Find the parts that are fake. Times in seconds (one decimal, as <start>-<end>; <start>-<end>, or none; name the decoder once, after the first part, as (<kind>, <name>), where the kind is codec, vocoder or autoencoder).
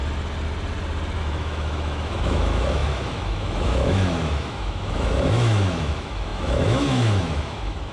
1.2-7.9 (autoencoder, DAC-VAE)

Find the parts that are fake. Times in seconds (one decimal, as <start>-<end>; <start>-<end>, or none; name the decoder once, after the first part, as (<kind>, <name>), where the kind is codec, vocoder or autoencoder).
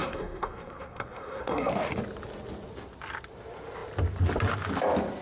0.0-1.7 (codec, SNAC)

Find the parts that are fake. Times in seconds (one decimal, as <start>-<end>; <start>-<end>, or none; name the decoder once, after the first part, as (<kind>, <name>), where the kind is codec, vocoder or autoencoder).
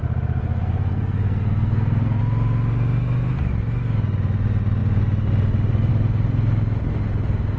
0.4-2.2 (codec, SNAC)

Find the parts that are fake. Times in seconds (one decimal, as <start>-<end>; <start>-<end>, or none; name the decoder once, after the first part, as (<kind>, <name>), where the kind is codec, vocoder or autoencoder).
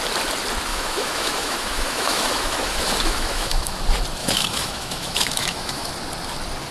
0.7-3.8 (autoencoder, DAC-VAE); 4.2-5.9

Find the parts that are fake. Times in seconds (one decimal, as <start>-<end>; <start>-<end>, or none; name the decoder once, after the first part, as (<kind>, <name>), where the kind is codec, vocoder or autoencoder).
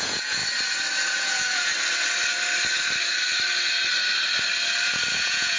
0.0-0.4 (vocoder, Vocos); 1.1-1.7; 5.1-5.6